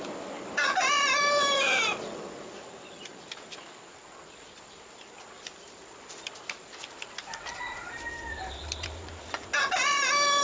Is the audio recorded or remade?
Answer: recorded